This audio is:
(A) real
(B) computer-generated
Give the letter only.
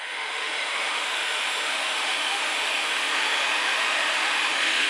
B